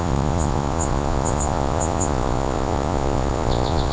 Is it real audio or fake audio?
fake